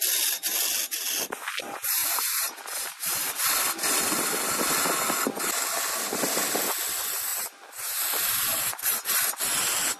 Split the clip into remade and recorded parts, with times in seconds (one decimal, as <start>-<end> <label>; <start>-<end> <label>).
0.0-2.0 recorded; 2.0-3.5 remade; 3.5-7.3 recorded; 7.3-8.8 remade; 8.8-10.0 recorded

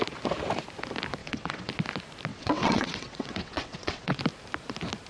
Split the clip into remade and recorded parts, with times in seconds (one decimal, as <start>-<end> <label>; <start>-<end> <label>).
0.0-1.2 recorded; 1.2-1.7 remade; 1.7-2.3 recorded; 2.3-4.2 remade; 4.2-5.1 recorded

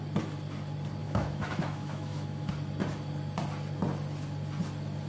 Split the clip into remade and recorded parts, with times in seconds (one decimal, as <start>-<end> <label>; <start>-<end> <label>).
0.0-1.0 recorded; 1.0-2.5 remade; 2.5-5.1 recorded

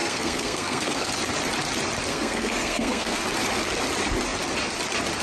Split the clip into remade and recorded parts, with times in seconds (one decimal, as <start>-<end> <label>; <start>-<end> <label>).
0.0-1.1 remade; 1.1-2.1 recorded; 2.1-3.2 remade; 3.2-5.2 recorded